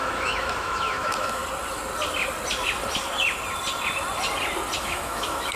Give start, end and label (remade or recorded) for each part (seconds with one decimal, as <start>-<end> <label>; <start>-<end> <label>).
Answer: 0.0-1.4 remade; 1.4-4.8 recorded; 4.8-5.6 remade